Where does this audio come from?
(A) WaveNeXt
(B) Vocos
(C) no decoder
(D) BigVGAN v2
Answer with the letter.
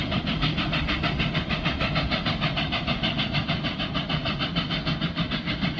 D